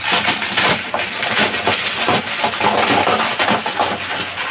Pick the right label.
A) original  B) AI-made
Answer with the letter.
A